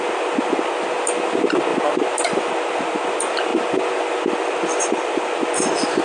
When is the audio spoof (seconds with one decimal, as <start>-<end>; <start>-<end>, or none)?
none